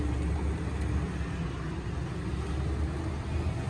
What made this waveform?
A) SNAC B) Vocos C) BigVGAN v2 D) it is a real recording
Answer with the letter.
D